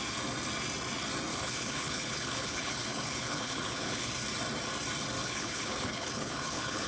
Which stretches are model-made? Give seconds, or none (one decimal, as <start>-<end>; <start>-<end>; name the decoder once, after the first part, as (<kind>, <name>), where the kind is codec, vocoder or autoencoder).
1.3-4.1 (codec, HILCodec); 5.2-6.9